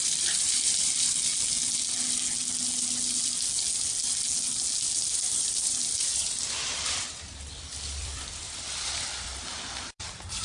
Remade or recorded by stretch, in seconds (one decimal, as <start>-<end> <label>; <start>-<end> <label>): 0.0-1.3 remade; 1.3-5.0 recorded; 5.0-10.4 remade